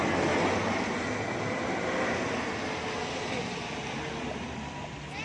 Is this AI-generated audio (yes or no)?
no